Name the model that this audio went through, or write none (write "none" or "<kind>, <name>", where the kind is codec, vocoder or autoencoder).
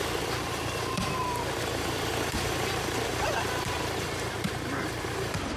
vocoder, BigVGAN v2